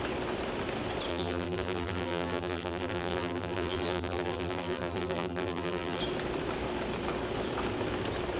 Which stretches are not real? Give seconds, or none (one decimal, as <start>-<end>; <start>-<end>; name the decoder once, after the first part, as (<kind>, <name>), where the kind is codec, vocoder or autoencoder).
1.1-6.0 (vocoder, BigVGAN v2)